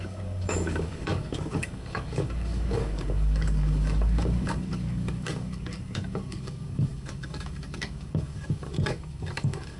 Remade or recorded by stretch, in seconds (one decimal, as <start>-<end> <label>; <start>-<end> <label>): 0.0-9.8 remade